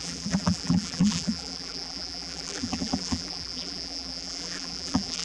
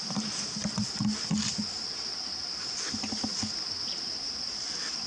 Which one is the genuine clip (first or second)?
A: second